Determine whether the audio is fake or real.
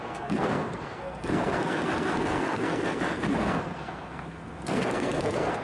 fake